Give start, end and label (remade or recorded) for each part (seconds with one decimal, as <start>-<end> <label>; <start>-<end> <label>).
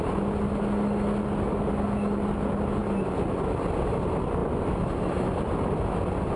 0.0-6.4 recorded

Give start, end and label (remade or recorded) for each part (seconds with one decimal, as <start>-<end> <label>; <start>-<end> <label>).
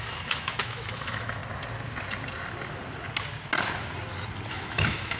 0.0-1.4 remade; 1.4-4.5 recorded; 4.5-5.2 remade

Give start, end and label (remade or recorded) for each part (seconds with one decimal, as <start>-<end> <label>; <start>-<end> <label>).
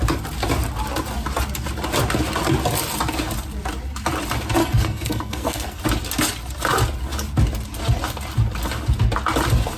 0.0-4.6 recorded; 4.6-5.8 remade; 5.8-9.8 recorded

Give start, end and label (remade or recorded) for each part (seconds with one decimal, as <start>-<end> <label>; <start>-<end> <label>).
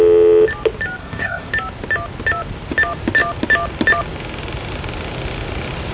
0.0-1.0 recorded; 1.0-1.5 remade; 1.5-5.9 recorded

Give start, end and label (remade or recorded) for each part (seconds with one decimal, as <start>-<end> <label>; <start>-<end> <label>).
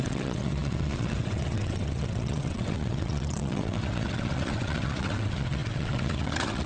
0.0-6.7 remade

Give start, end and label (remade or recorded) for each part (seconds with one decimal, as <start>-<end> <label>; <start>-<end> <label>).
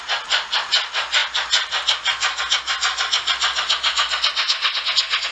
0.0-5.3 recorded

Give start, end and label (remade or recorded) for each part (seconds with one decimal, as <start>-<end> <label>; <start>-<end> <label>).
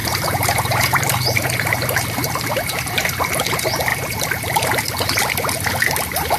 0.0-2.9 remade; 2.9-6.4 recorded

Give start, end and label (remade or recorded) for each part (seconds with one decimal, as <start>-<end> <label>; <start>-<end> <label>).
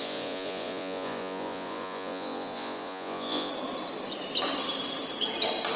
0.0-3.5 remade; 3.5-5.8 recorded